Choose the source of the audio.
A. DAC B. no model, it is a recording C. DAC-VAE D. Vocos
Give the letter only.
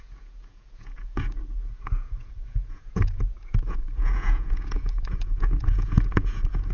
D